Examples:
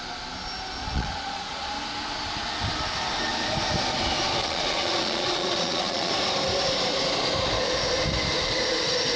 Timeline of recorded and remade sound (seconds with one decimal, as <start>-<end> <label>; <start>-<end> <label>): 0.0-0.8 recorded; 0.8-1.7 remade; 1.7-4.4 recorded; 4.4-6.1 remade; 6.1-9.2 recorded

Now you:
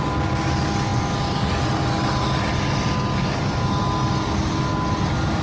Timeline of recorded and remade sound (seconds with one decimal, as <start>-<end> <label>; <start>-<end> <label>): 0.0-5.4 recorded

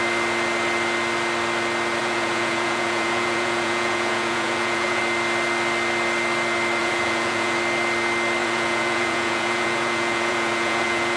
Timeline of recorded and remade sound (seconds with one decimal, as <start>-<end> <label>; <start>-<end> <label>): 0.0-2.0 recorded; 2.0-5.0 remade; 5.0-6.8 recorded; 6.8-7.6 remade; 7.6-8.4 recorded; 8.4-11.2 remade